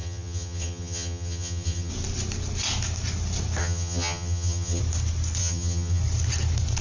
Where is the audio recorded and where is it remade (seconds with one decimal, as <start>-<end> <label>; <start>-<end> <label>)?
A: 0.0-1.9 remade; 1.9-3.6 recorded; 3.6-4.8 remade; 4.8-5.4 recorded; 5.4-6.0 remade; 6.0-6.8 recorded